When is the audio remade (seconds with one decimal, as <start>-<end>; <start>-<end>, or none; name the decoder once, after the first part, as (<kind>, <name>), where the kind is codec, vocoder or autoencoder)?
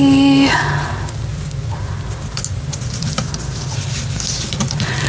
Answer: 1.3-4.4 (vocoder, BigVGAN v2)